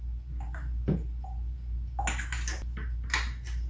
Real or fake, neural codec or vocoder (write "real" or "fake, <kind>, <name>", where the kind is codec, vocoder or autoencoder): real